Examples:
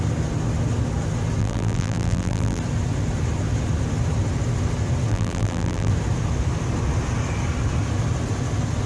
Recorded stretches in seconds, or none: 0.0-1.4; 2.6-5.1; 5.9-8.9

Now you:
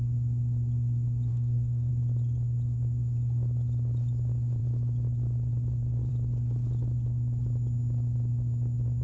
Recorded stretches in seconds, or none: 0.0-1.3; 1.9-9.0

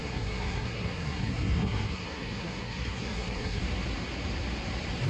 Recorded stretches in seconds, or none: 3.6-5.1